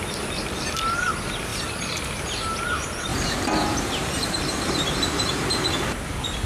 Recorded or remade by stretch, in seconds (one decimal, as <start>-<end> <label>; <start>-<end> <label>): 0.0-3.1 recorded; 3.1-5.6 remade; 5.6-6.5 recorded